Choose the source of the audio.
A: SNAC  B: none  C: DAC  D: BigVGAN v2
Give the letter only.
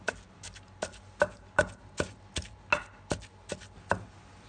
B